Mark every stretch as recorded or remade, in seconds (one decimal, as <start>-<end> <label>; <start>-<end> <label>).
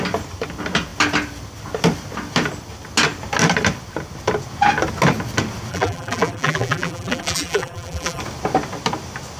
0.0-5.7 recorded; 5.7-8.2 remade; 8.2-9.4 recorded